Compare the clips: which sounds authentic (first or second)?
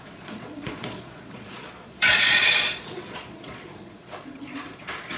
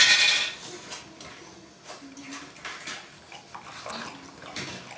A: second